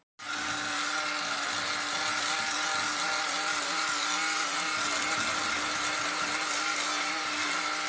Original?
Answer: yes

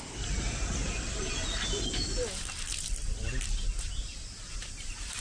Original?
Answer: yes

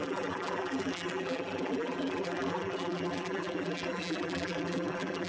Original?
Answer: no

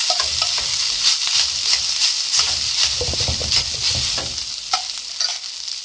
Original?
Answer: yes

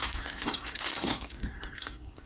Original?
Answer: no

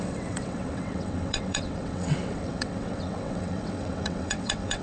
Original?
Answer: no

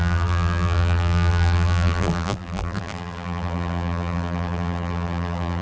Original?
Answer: no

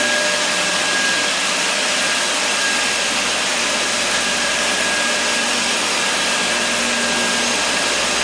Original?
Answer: yes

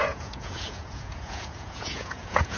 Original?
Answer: no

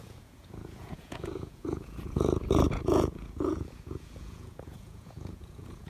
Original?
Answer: no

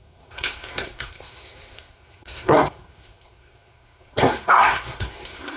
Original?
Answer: no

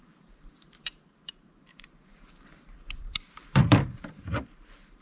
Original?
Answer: no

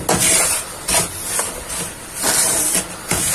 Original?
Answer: yes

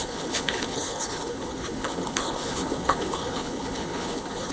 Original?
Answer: no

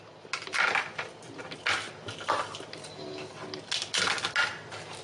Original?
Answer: yes